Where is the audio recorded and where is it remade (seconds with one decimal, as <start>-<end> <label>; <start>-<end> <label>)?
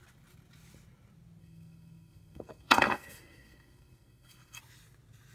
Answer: 0.0-1.4 recorded; 1.4-4.6 remade; 4.6-5.3 recorded